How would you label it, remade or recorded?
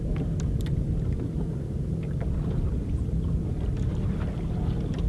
recorded